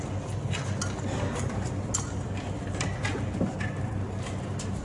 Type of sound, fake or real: real